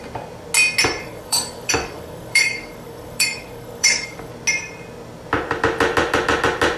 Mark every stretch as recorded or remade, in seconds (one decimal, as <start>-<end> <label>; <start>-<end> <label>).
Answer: 0.0-1.0 recorded; 1.0-4.3 remade; 4.3-6.8 recorded